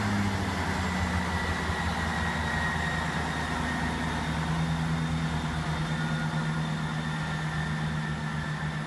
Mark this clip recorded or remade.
recorded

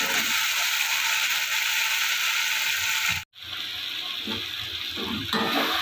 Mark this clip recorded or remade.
recorded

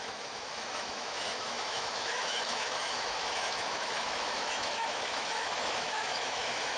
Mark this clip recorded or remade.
remade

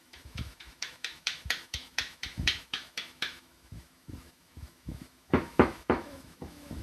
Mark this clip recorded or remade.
remade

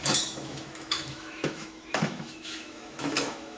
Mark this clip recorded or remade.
remade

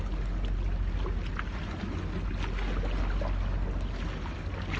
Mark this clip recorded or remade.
recorded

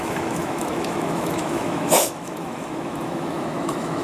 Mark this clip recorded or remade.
remade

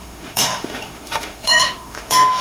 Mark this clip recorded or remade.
remade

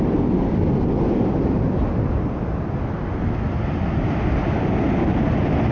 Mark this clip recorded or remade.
recorded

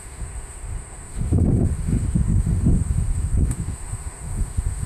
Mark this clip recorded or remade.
remade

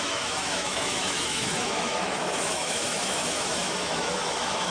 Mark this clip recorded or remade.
remade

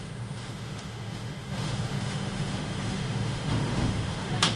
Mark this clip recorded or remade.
remade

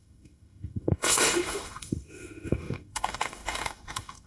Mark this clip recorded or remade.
remade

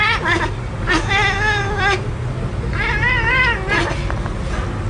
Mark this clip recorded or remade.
recorded